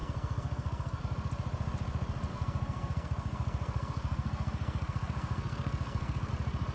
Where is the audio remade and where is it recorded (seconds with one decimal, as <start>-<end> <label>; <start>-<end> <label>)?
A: 0.0-1.0 remade; 1.0-2.3 recorded; 2.3-6.3 remade; 6.3-6.7 recorded